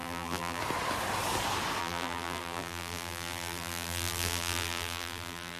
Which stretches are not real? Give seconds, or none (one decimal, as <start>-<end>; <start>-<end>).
0.0-0.6; 1.8-5.6